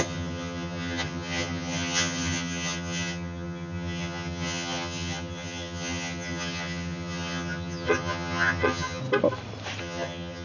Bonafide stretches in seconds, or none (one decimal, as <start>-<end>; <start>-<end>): 9.0-9.8